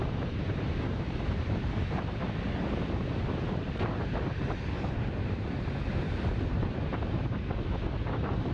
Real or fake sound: fake